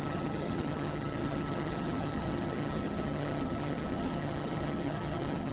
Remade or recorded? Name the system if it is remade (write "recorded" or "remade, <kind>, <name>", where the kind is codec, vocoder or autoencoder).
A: remade, vocoder, HiFi-GAN